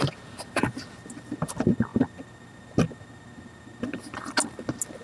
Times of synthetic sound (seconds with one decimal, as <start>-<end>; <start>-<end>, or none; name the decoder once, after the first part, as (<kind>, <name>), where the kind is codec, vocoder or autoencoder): none

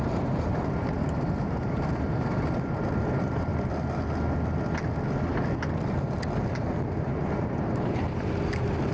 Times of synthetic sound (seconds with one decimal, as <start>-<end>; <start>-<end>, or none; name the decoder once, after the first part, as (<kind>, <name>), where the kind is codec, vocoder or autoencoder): 0.0-3.5 (vocoder, BigVGAN v2); 6.0-8.9

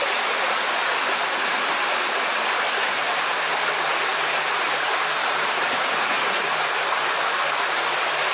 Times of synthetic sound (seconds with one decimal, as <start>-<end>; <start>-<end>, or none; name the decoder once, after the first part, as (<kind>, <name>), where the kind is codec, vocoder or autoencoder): 4.1-6.4 (vocoder, BigVGAN v2)

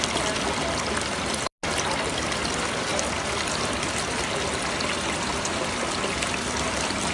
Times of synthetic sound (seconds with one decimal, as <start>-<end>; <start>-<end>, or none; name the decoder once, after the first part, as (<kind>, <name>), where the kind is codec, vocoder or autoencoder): 5.5-6.0 (vocoder, BigVGAN v2)

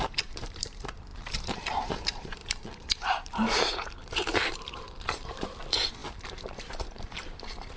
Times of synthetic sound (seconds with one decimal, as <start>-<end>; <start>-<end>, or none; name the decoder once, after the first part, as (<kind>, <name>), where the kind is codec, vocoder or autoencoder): 0.0-7.8 (vocoder, BigVGAN v2)